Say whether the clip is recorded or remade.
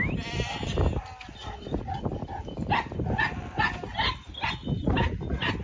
recorded